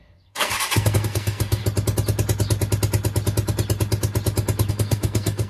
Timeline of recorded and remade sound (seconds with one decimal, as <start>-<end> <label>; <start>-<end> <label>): 0.0-1.6 remade; 1.6-4.7 recorded; 4.7-5.5 remade